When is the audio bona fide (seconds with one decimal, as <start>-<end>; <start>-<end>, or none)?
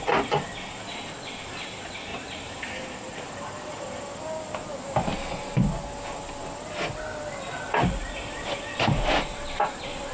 0.0-2.1; 3.8-10.1